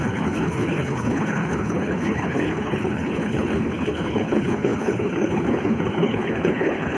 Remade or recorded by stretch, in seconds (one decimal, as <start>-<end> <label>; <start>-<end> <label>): 0.0-7.0 remade

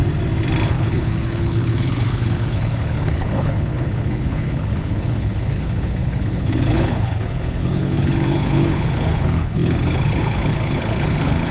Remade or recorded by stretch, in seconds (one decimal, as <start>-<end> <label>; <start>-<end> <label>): 0.0-0.7 recorded; 0.7-11.5 remade